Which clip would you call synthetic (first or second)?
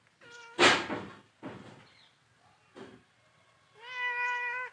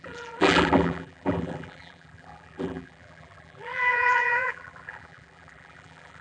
second